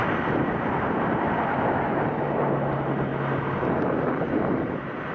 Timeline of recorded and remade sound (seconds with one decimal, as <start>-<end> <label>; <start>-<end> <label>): 0.0-5.1 recorded